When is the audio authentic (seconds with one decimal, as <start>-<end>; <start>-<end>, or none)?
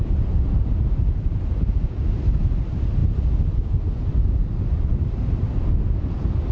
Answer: 0.0-6.5